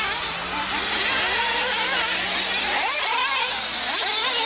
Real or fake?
real